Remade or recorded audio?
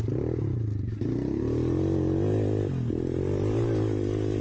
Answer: recorded